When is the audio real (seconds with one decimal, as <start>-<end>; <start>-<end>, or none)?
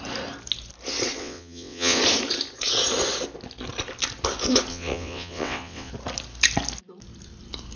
0.0-1.2; 2.0-4.7; 5.9-7.8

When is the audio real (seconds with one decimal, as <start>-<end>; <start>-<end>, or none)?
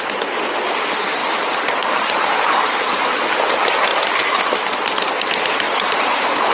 0.0-3.9; 4.6-6.5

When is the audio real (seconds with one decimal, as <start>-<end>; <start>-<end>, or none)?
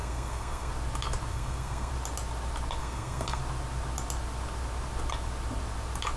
0.7-1.3; 1.9-2.8; 3.4-6.2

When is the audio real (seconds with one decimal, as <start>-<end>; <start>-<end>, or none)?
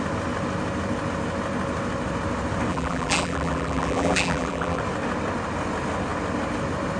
0.0-2.7; 4.8-7.0